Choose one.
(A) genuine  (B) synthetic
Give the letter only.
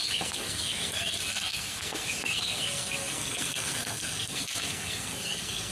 B